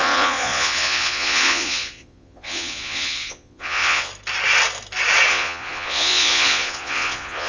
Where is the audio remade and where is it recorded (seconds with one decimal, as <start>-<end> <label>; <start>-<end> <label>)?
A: 0.0-4.1 remade; 4.1-5.3 recorded; 5.3-7.5 remade